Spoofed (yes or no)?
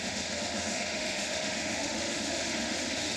yes